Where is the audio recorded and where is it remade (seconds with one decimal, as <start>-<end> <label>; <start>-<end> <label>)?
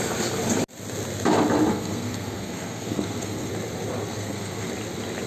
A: 0.0-1.7 recorded; 1.7-3.5 remade; 3.5-4.1 recorded; 4.1-4.7 remade; 4.7-5.3 recorded